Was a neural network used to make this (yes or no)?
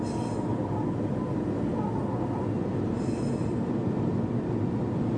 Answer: no